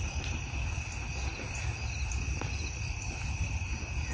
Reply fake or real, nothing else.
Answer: real